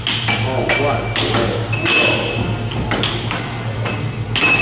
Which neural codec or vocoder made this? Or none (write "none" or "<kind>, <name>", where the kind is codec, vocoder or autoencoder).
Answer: none